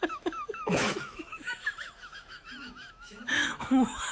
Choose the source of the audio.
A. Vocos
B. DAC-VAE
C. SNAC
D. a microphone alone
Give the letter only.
B